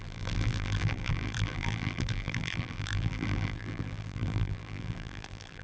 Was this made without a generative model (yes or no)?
no